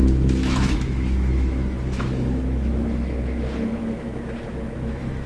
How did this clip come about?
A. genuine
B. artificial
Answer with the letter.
B